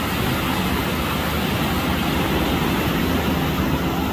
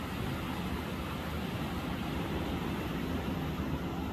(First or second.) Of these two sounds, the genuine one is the first